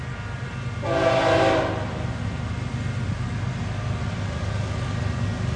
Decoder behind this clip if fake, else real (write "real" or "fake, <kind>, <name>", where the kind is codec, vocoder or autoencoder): real